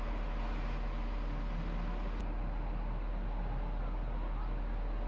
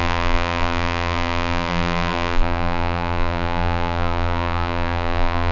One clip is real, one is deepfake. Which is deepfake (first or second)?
second